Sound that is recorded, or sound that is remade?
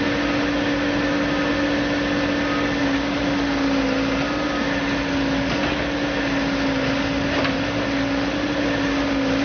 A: recorded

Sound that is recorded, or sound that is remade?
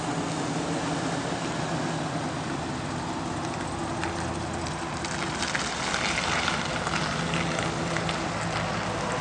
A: recorded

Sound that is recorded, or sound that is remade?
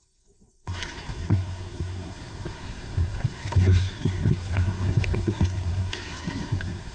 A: remade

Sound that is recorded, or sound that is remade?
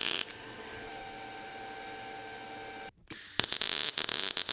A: recorded